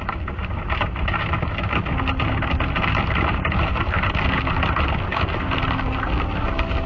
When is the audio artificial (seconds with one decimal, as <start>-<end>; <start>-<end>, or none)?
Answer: 0.4-1.2